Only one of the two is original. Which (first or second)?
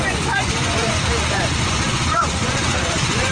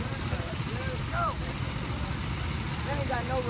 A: second